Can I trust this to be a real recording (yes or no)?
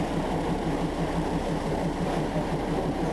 no